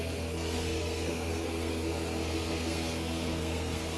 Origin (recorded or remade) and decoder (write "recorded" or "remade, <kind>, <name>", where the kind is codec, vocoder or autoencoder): remade, codec, SNAC